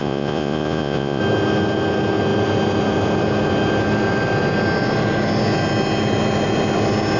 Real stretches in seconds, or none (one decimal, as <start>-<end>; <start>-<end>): 1.2-7.2